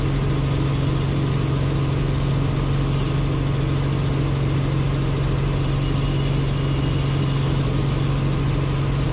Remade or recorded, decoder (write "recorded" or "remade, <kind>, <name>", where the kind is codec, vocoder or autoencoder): recorded